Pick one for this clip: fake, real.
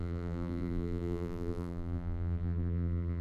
fake